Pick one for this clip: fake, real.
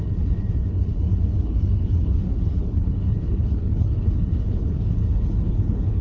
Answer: fake